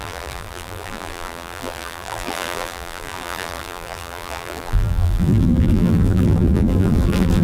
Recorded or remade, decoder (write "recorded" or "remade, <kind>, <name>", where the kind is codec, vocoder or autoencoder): remade, vocoder, BigVGAN v2